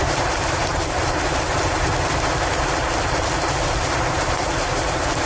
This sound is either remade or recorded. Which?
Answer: recorded